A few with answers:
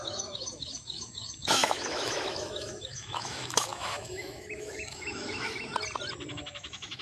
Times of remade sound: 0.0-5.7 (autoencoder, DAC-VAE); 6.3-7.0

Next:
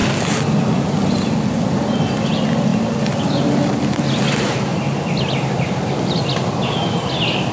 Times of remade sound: none

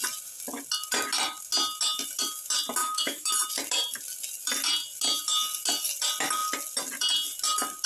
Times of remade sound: 2.8-3.3 (autoencoder, DAC-VAE)

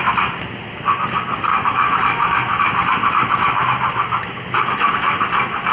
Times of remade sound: 1.5-4.9 (autoencoder, DAC-VAE)